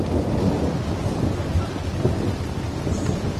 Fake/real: real